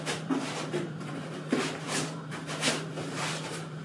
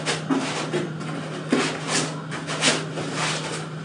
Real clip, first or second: second